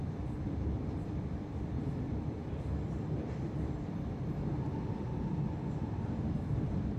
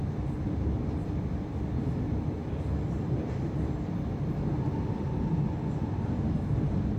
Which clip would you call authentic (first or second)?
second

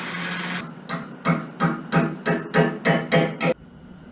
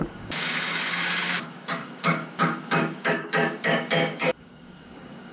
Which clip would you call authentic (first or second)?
first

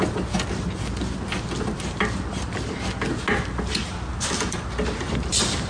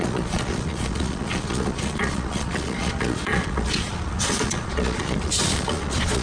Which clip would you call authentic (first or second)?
first